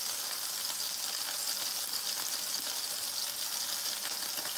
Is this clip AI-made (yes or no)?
no